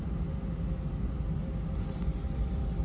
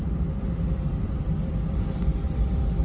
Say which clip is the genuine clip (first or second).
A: first